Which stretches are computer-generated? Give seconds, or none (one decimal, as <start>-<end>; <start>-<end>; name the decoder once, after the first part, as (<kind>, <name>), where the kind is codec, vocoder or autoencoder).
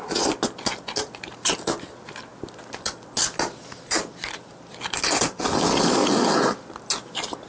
none